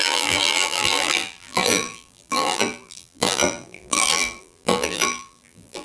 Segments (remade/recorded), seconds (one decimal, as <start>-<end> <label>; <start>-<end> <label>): 0.0-5.8 remade